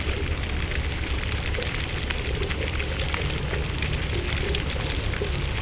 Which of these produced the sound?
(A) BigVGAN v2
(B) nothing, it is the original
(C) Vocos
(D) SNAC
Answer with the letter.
B